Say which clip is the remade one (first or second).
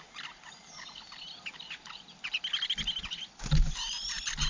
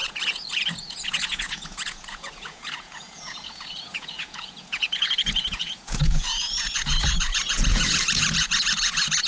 second